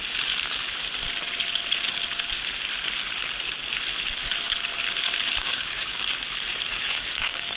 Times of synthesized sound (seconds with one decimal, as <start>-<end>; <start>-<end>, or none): 5.4-6.0; 6.7-7.6